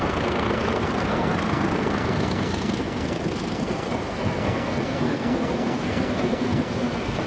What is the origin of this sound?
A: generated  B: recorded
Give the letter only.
A